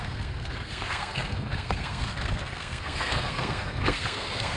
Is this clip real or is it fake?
fake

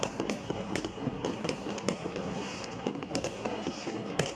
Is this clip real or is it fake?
fake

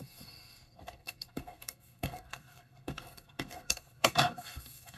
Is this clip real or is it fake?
fake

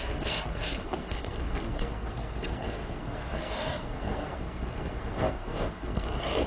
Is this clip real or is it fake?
fake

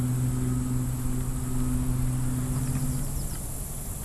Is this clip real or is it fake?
real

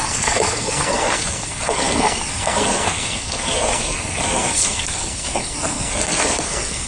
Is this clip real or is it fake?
fake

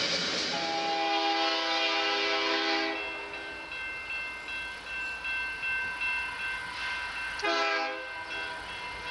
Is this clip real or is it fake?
real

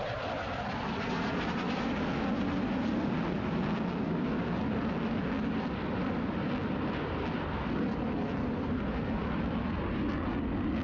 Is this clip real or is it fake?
real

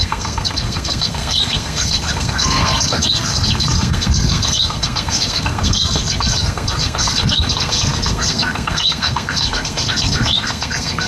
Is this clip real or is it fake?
fake